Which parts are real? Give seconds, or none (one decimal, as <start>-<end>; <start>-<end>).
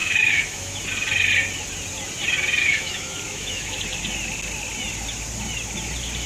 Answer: 0.8-2.6; 3.8-6.3